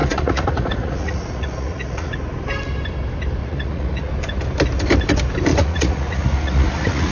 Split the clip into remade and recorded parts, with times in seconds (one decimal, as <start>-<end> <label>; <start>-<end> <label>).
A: 0.0-2.1 remade; 2.1-3.4 recorded; 3.4-4.1 remade; 4.1-5.5 recorded; 5.5-7.1 remade